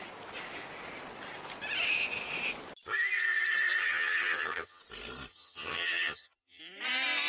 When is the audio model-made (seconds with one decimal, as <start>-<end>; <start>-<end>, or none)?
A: 3.8-4.8; 5.3-6.6